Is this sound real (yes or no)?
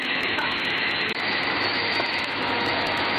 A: no